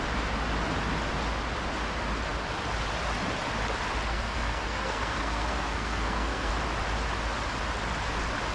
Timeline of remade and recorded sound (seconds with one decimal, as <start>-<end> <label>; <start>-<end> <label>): 0.0-4.1 recorded; 4.1-6.5 remade; 6.5-8.5 recorded